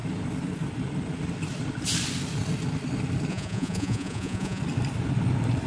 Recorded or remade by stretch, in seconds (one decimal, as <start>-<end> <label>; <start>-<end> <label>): 0.0-3.3 recorded; 3.3-4.6 remade; 4.6-5.7 recorded